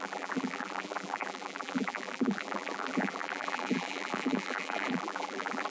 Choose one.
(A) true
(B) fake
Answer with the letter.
B